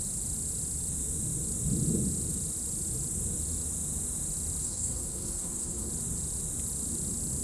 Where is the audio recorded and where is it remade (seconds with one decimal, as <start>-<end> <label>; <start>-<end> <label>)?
0.0-4.6 recorded; 4.6-5.9 remade; 5.9-7.4 recorded